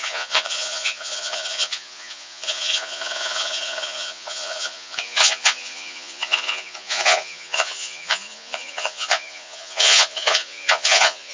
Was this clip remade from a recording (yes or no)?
yes